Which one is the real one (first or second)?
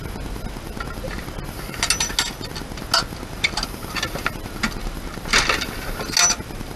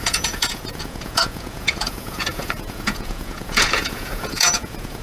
first